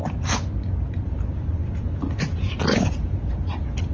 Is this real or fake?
real